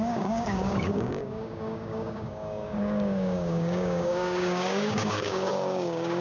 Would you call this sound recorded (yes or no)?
no